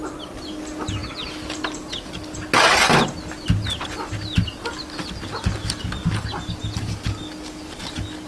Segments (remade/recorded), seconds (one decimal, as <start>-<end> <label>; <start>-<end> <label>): 0.0-8.3 recorded